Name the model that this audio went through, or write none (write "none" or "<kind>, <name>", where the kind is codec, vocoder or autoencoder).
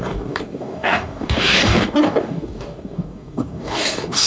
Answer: codec, DAC